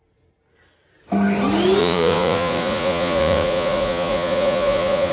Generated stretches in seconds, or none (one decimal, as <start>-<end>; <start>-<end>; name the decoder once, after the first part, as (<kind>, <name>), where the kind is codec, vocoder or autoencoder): 1.8-5.1 (vocoder, Vocos)